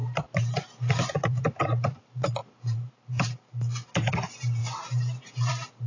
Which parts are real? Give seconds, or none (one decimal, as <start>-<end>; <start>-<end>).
none